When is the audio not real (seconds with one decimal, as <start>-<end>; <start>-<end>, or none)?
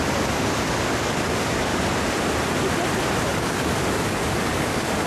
1.0-1.7; 3.3-5.1